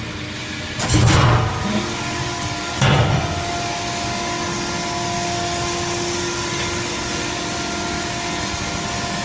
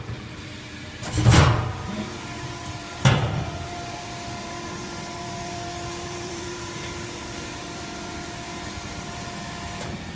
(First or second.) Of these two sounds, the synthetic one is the second